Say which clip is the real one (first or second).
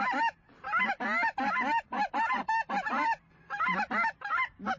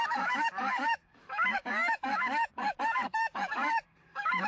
first